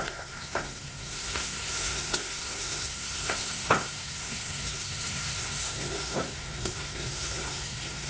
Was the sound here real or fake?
fake